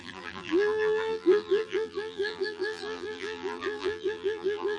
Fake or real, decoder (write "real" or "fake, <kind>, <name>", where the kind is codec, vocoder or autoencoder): fake, vocoder, BigVGAN v2